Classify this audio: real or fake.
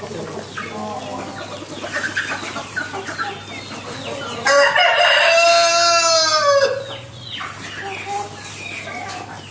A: real